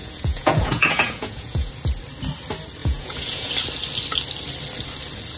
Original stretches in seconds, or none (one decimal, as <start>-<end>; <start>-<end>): 1.7-2.8; 3.5-5.4